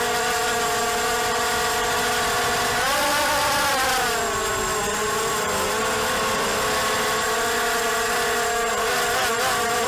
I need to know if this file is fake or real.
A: real